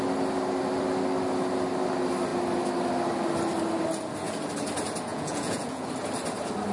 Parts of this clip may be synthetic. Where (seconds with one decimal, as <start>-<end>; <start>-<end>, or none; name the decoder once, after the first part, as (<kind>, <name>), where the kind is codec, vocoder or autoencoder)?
5.1-5.9 (vocoder, Vocos)